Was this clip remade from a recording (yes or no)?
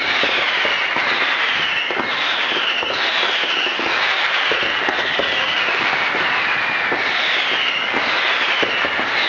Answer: no